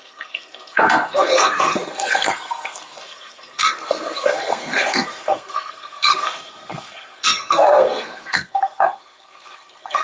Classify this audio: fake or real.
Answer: fake